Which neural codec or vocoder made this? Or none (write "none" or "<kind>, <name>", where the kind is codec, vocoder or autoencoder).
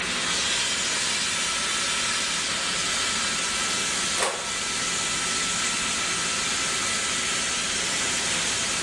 none